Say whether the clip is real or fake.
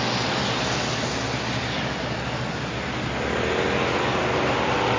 real